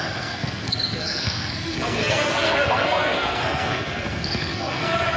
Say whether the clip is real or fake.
fake